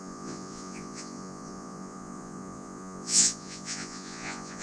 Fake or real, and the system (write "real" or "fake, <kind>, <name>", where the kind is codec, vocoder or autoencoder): fake, vocoder, Vocos